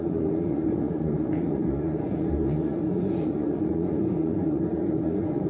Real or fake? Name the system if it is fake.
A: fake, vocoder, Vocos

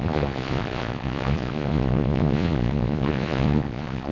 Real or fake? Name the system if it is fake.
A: fake, vocoder, Vocos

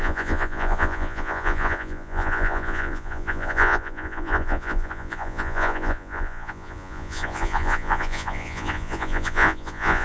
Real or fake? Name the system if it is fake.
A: fake, vocoder, Vocos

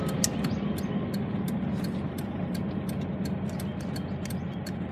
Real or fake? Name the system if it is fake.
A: real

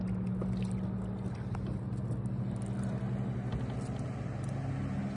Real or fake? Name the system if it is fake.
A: real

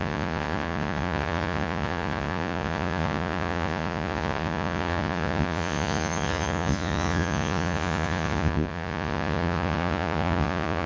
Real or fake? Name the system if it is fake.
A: fake, vocoder, Vocos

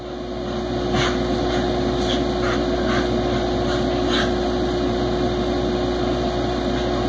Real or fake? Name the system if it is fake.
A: real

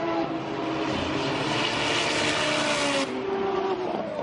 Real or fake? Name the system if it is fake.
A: real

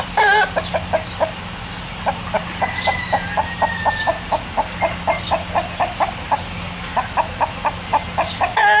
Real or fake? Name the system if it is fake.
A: real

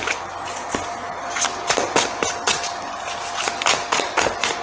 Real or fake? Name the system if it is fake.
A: real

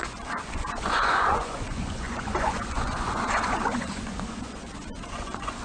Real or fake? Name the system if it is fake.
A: fake, vocoder, Vocos